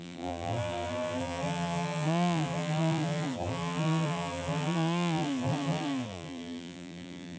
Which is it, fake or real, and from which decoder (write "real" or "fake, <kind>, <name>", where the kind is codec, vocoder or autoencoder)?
fake, vocoder, BigVGAN v2